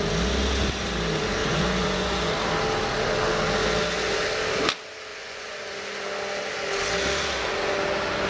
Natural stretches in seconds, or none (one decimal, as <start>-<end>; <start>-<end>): 0.0-1.4; 2.3-5.1; 5.6-8.3